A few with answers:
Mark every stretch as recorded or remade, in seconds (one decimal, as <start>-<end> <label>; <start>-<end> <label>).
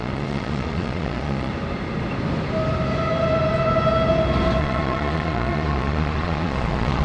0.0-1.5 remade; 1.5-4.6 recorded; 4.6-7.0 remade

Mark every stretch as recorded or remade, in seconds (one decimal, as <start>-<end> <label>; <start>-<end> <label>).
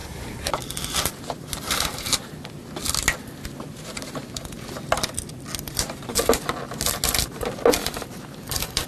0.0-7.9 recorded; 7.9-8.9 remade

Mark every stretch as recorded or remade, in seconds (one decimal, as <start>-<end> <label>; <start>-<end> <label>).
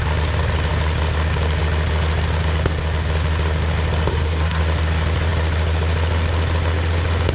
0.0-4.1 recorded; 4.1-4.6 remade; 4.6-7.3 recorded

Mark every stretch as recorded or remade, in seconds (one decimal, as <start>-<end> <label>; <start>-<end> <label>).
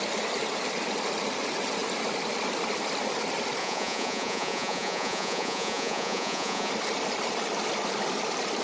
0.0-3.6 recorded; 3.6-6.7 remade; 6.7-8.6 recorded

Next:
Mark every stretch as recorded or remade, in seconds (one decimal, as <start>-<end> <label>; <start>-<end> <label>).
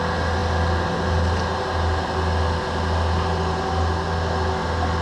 0.0-5.0 recorded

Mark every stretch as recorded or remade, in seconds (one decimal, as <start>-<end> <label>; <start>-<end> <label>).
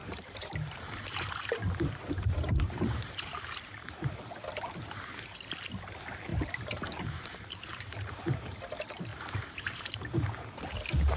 0.0-4.3 remade; 4.3-6.3 recorded; 6.3-8.6 remade; 8.6-9.1 recorded; 9.1-10.0 remade; 10.0-11.2 recorded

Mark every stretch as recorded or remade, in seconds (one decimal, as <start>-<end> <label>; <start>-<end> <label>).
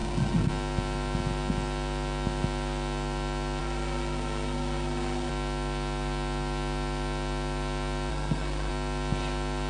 0.0-0.5 remade; 0.5-3.6 recorded; 3.6-5.3 remade; 5.3-8.1 recorded; 8.1-8.7 remade; 8.7-9.7 recorded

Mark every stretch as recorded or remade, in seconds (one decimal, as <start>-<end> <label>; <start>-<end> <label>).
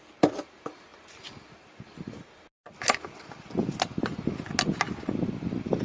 0.0-5.8 recorded